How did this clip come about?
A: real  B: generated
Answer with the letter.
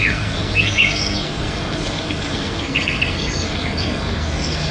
B